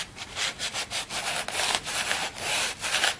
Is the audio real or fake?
fake